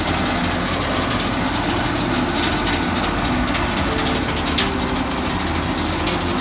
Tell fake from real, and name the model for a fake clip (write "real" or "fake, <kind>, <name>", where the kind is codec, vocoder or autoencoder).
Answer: real